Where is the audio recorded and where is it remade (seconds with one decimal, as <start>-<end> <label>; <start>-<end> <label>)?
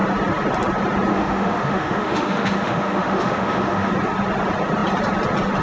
0.0-1.1 recorded; 1.1-3.9 remade; 3.9-5.6 recorded